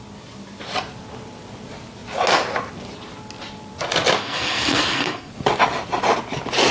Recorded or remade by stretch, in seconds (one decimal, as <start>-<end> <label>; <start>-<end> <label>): 0.0-4.2 recorded; 4.2-5.3 remade; 5.3-6.7 recorded